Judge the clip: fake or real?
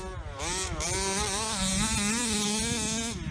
real